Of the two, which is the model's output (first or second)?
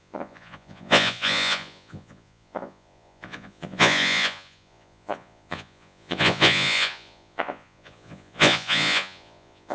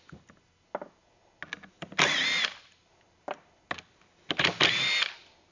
first